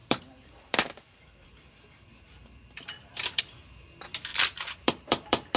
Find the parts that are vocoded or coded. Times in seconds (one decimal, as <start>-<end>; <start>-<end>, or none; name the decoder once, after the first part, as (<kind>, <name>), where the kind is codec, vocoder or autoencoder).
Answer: 0.0-3.4 (vocoder, BigVGAN v2); 4.3-5.6